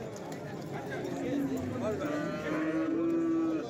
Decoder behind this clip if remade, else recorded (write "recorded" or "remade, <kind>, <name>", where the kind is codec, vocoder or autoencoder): recorded